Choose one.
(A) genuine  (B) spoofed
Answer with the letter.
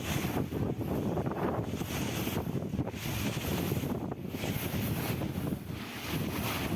A